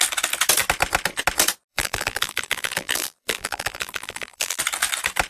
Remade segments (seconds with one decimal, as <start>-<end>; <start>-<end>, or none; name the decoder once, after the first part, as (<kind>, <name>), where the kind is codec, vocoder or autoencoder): 1.7-4.6 (vocoder, BigVGAN v2)